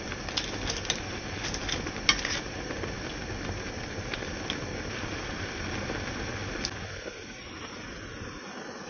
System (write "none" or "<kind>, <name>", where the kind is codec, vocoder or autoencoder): none